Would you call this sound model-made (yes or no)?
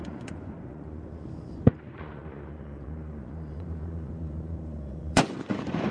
yes